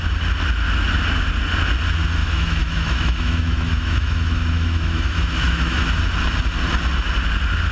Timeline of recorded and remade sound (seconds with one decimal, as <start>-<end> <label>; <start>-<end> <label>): 0.0-2.2 recorded; 2.2-5.8 remade; 5.8-7.7 recorded